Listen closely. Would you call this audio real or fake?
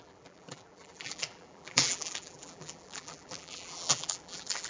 fake